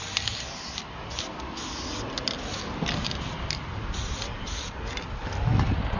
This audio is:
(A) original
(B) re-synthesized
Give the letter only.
A